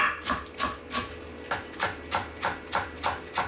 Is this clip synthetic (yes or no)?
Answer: no